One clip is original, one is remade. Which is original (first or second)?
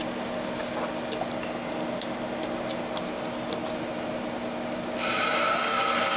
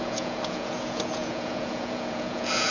first